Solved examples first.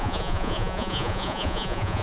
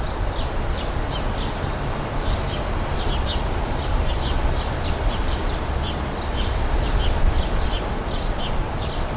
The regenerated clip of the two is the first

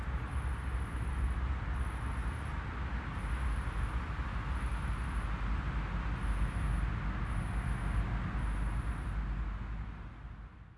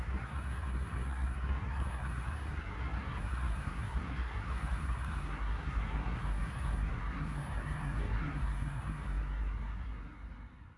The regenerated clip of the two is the second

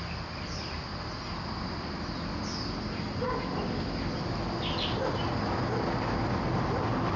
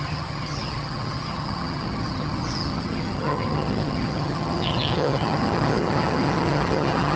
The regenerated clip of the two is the second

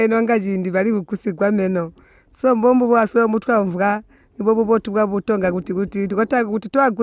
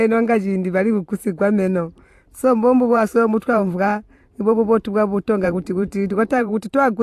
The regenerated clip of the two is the second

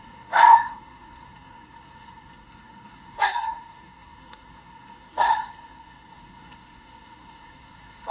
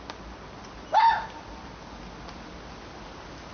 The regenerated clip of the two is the first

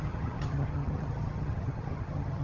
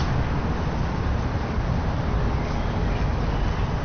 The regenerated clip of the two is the first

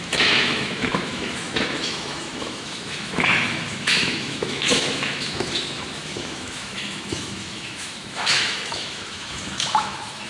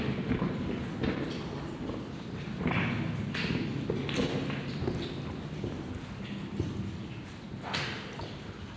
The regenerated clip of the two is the first